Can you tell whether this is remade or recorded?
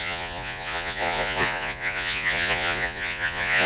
remade